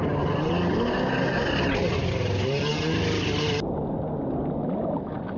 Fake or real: real